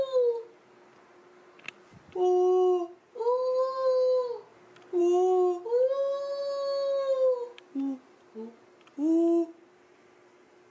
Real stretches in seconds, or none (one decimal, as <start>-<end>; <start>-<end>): 0.0-10.7